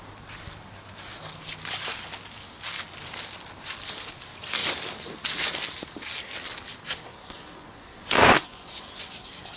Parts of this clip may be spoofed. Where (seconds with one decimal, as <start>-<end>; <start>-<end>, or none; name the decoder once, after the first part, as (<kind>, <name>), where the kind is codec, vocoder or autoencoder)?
7.1-9.2 (vocoder, Vocos)